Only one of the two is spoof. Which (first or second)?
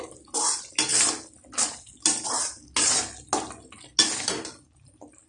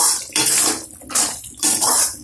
second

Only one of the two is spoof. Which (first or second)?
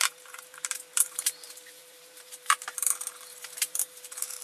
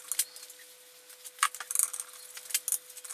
first